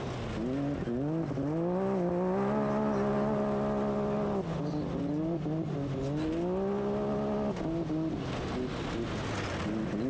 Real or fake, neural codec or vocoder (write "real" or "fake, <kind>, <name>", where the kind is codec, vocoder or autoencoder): real